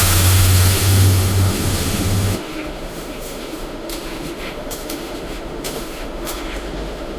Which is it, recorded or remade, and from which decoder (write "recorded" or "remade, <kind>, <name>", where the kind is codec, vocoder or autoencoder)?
remade, autoencoder, DAC-VAE